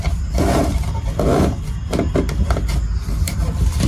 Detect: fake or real real